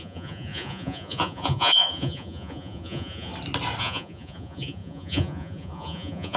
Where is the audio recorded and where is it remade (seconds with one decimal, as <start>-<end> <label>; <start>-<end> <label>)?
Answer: 0.0-3.3 remade; 3.3-3.8 recorded; 3.8-6.4 remade

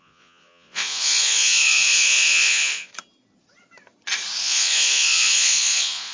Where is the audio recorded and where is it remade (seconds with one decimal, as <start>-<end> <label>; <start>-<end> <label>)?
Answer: 0.0-2.9 remade; 2.9-4.4 recorded; 4.4-6.1 remade

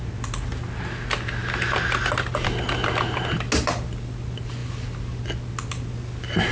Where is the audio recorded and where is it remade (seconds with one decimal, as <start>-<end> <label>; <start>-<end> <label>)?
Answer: 0.0-6.5 recorded

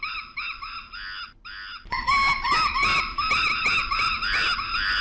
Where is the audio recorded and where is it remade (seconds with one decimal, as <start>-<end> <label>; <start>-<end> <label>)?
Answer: 0.0-5.0 recorded

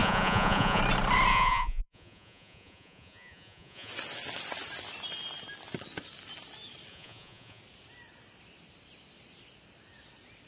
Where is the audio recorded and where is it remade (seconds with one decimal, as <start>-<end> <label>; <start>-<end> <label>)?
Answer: 0.0-0.8 remade; 0.8-1.3 recorded; 1.3-3.9 remade; 3.9-6.9 recorded; 6.9-7.6 remade; 7.6-10.5 recorded